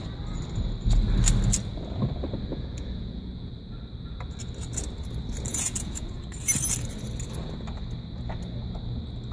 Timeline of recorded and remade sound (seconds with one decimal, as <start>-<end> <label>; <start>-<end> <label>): 0.0-2.5 recorded; 2.5-3.5 remade; 3.5-5.5 recorded; 5.5-6.2 remade; 6.2-9.3 recorded